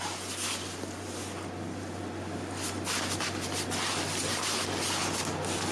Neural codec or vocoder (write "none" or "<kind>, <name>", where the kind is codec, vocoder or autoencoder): none